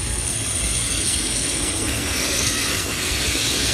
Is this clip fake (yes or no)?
yes